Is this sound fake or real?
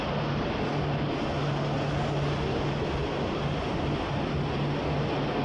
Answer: real